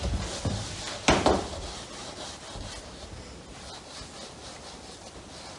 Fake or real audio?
real